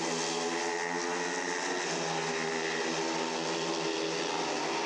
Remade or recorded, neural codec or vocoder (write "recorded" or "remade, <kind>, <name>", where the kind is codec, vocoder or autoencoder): recorded